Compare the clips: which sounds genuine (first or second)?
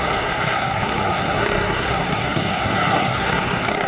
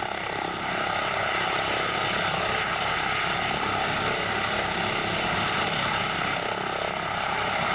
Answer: second